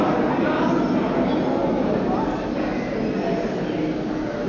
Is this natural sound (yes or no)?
yes